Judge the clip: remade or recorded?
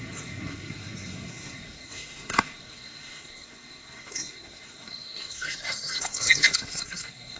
remade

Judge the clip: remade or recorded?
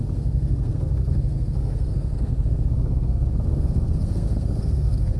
remade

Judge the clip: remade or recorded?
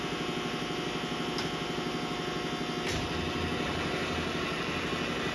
recorded